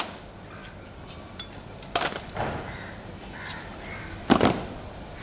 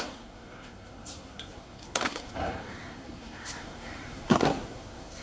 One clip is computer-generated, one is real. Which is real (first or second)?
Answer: first